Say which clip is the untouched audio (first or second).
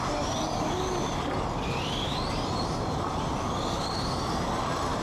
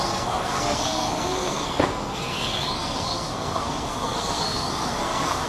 first